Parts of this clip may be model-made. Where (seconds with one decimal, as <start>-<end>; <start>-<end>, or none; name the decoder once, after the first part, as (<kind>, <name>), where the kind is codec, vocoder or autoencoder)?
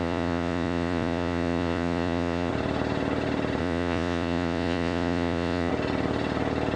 0.0-2.5 (vocoder, Vocos); 3.6-5.7